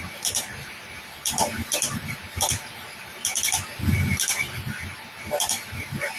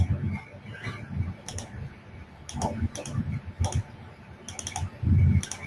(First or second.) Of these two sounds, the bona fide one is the second